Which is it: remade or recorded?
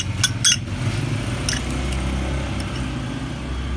recorded